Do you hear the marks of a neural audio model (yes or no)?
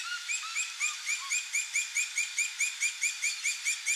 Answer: no